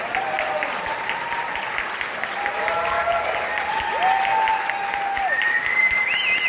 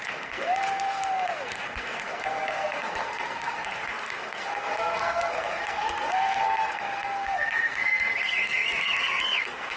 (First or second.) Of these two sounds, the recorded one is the first